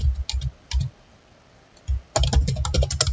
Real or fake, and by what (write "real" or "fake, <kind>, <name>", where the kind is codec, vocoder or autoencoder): real